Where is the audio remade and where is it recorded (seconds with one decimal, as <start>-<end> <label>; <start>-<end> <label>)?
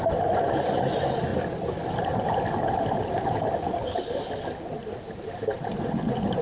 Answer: 0.0-6.4 recorded